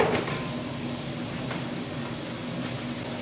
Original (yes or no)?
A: yes